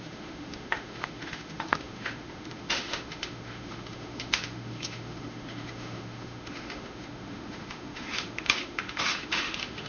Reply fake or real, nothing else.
fake